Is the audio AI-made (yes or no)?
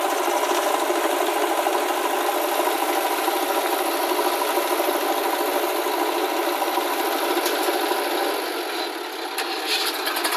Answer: no